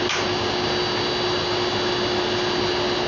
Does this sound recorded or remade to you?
recorded